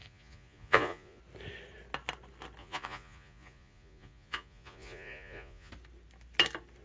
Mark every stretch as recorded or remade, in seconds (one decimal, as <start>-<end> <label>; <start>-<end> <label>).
0.0-1.2 remade; 1.2-2.6 recorded; 2.6-5.7 remade; 5.7-6.8 recorded